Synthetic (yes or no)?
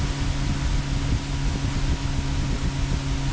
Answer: no